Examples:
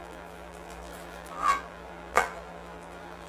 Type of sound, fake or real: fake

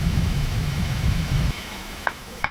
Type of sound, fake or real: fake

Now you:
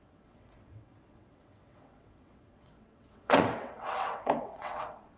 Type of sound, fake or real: fake